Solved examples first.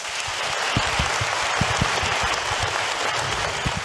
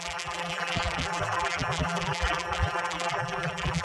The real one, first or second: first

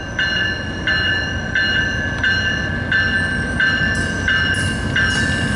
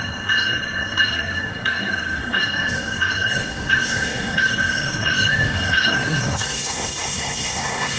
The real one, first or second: first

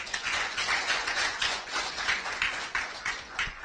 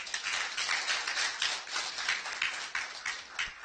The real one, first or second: second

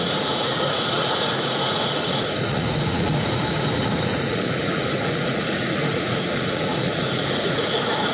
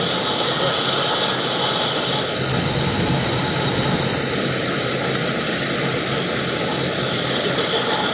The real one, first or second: second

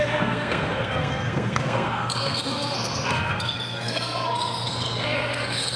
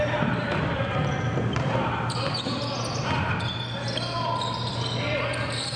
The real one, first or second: second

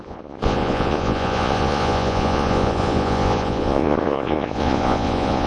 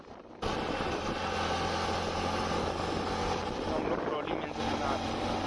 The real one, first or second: second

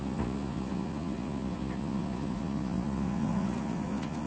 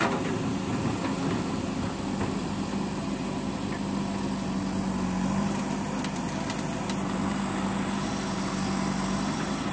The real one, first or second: second